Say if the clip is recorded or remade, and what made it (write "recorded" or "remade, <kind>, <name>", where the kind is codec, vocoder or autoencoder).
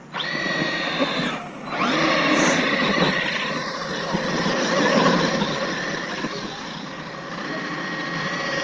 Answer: recorded